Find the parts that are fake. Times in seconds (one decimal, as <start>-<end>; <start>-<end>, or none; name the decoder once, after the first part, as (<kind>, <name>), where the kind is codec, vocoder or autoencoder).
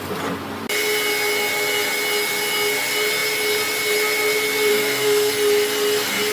4.7-5.3 (codec, SNAC)